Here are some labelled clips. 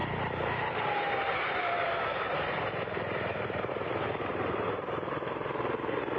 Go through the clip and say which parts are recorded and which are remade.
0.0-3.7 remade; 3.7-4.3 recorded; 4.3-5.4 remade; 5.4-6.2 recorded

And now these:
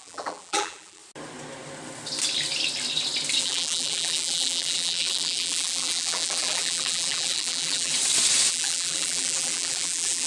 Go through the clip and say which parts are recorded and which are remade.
0.0-1.0 remade; 1.0-3.4 recorded; 3.4-7.9 remade; 7.9-8.5 recorded; 8.5-10.3 remade

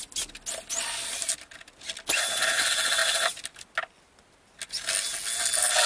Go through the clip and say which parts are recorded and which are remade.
0.0-5.9 recorded

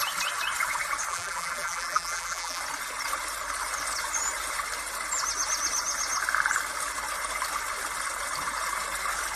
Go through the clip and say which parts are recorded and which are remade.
0.0-1.1 recorded; 1.1-2.6 remade; 2.6-9.4 recorded

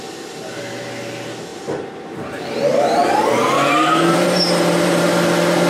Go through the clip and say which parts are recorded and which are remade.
0.0-1.5 recorded; 1.5-2.2 remade; 2.2-3.0 recorded; 3.0-5.7 remade

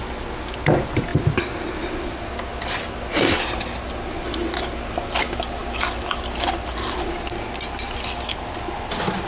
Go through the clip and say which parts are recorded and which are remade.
0.0-1.1 recorded; 1.1-1.9 remade; 1.9-2.5 recorded; 2.5-3.6 remade; 3.6-9.3 recorded

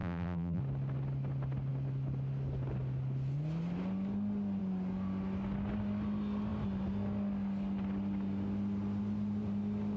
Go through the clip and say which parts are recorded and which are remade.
0.0-0.6 remade; 0.6-10.0 recorded